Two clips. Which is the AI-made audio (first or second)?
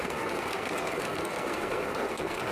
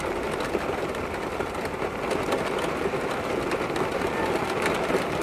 first